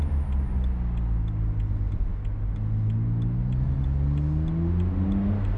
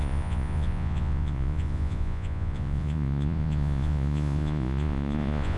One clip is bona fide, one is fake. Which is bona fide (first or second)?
first